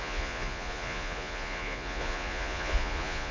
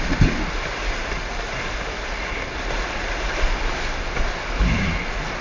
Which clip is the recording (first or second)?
second